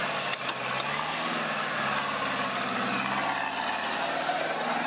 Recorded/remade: recorded